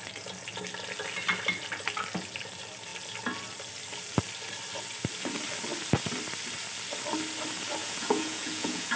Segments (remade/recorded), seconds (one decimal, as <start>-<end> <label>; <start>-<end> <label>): 0.0-7.8 recorded; 7.8-9.0 remade